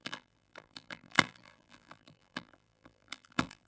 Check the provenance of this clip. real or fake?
fake